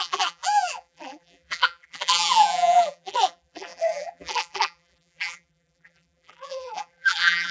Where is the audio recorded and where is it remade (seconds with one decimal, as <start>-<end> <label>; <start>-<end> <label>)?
0.0-7.5 remade